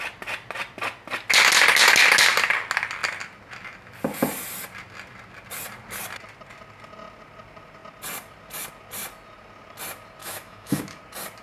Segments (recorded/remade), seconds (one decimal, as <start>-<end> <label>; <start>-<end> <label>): 0.0-10.2 recorded; 10.2-11.0 remade; 11.0-11.4 recorded